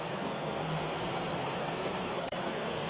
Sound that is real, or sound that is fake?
fake